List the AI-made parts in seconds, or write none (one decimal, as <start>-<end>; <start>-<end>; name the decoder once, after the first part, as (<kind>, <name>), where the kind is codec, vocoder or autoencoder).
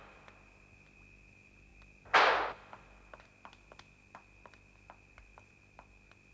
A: none